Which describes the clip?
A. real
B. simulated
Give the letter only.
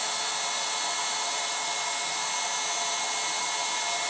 A